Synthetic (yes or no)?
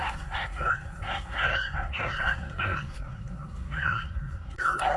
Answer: yes